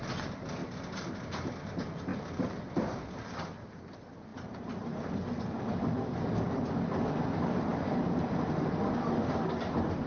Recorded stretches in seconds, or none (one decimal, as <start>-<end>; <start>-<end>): 0.0-4.3; 4.8-10.1